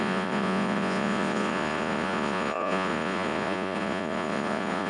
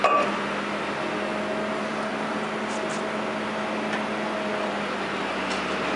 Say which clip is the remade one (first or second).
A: first